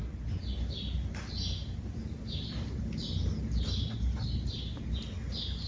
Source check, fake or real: real